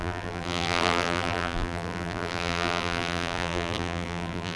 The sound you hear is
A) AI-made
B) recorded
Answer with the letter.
A